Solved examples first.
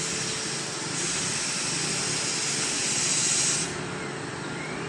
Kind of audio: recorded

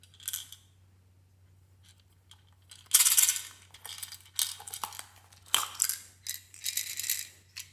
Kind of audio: recorded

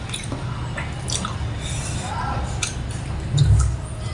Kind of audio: recorded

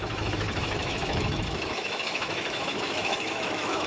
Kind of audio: remade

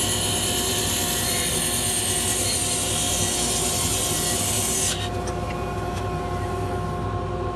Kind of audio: recorded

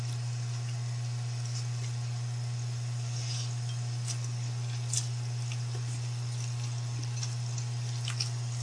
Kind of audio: recorded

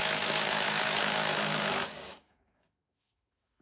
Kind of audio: remade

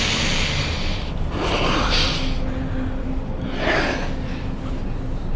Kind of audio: recorded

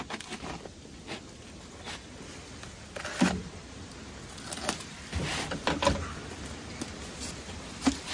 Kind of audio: recorded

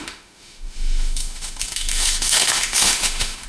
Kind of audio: remade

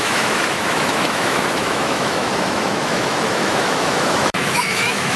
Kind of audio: remade